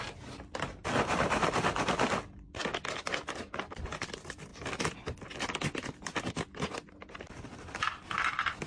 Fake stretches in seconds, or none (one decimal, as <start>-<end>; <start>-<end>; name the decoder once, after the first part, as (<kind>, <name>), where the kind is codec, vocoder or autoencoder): none